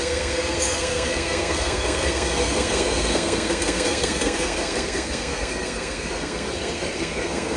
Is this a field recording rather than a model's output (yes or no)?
no